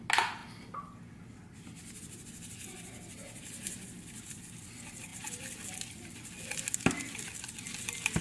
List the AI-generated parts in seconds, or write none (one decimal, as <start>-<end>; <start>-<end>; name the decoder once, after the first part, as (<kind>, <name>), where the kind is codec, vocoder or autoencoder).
none